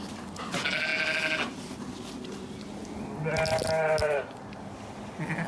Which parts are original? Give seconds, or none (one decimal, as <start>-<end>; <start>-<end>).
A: 0.0-5.5